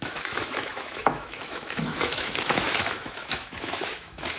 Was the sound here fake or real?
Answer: fake